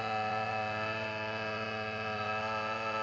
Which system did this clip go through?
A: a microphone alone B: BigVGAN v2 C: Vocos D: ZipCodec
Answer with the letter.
C